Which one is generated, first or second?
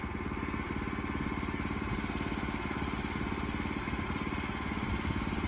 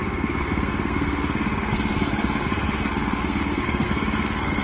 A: second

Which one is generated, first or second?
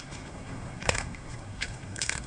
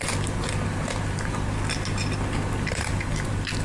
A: first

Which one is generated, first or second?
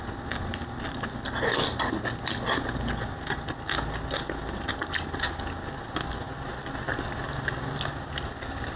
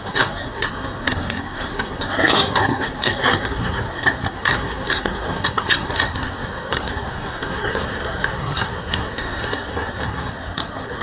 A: second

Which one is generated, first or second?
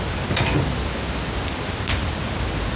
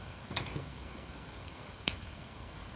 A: second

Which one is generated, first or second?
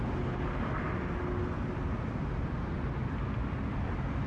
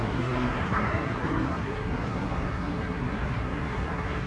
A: second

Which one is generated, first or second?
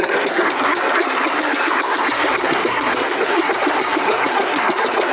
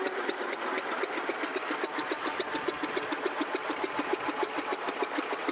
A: first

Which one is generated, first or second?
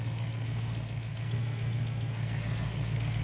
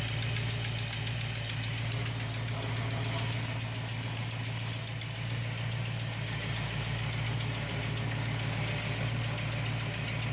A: first